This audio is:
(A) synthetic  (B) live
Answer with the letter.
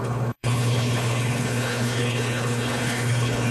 A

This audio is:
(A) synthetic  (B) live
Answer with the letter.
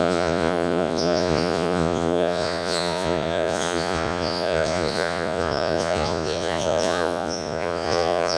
A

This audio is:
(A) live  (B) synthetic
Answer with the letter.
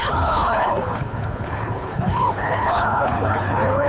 B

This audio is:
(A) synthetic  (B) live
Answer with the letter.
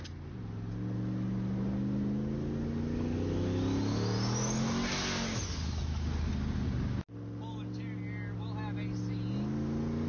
B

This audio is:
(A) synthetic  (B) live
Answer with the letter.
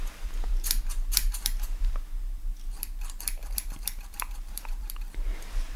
A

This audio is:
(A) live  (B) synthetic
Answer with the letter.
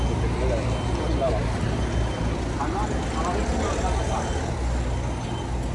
A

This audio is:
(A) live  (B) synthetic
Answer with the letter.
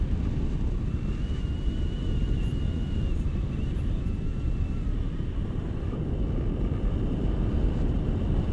A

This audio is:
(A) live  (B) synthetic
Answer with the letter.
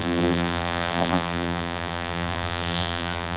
B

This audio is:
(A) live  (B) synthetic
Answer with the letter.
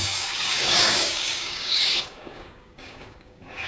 B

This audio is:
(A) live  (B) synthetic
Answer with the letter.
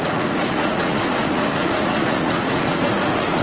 B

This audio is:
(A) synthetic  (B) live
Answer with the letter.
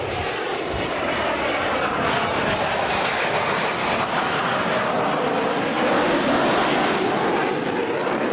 B